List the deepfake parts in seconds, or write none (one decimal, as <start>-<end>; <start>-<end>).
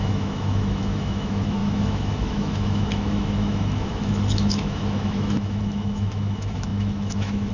0.0-7.5